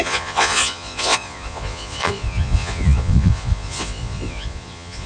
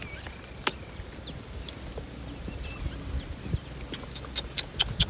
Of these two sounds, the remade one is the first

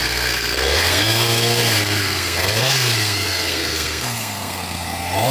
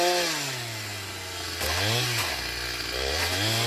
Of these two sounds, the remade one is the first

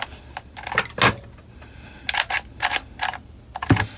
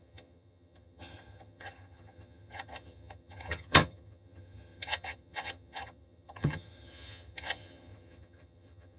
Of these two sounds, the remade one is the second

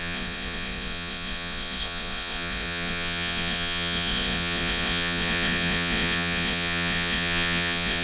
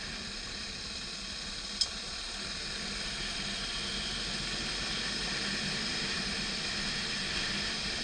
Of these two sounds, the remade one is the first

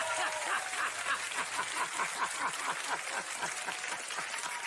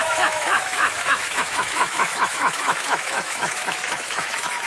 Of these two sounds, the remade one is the second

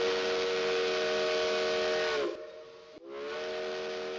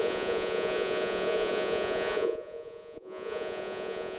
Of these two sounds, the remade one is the second